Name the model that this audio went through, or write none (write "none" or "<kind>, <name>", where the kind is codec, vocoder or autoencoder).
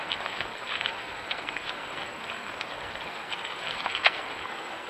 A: codec, SNAC